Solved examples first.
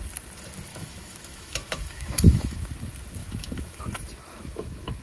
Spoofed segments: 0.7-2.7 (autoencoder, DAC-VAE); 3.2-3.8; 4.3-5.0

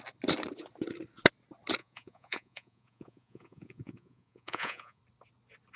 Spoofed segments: 1.8-5.0 (vocoder, Vocos)

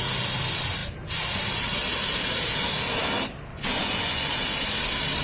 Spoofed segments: 3.5-4.4 (vocoder, Vocos)

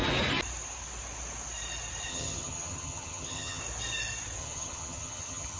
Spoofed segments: 2.1-3.6 (vocoder, HiFi-GAN); 4.4-5.6